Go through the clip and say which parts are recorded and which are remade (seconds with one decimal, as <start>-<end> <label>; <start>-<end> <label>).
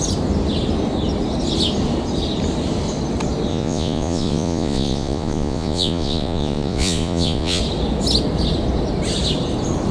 0.0-3.5 recorded; 3.5-7.6 remade; 7.6-9.9 recorded